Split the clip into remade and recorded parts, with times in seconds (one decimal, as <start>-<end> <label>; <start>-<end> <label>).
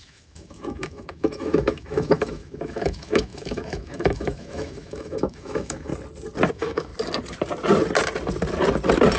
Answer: 0.0-5.9 remade; 5.9-6.5 recorded; 6.5-6.9 remade; 6.9-9.2 recorded